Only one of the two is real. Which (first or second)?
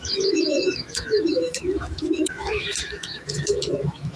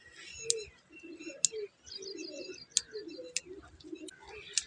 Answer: second